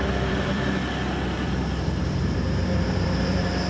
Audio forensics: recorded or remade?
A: remade